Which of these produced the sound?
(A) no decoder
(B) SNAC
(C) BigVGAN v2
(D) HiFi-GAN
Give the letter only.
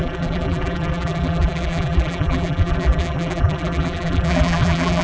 C